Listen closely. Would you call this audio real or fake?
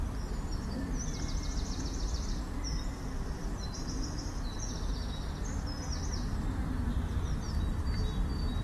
real